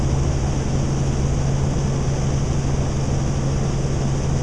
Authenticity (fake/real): real